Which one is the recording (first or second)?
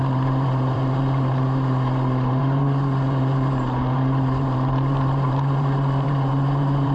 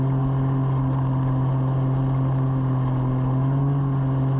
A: second